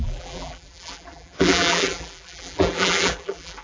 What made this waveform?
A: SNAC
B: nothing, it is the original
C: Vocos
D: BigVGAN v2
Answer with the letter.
D